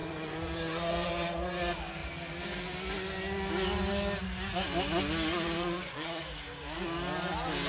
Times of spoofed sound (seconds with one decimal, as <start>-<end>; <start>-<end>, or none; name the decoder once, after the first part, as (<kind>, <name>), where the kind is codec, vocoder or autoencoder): 0.0-1.1 (vocoder, Vocos); 5.3-6.2